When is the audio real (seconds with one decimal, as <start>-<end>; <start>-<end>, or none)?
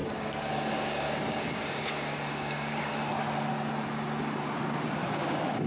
2.9-5.0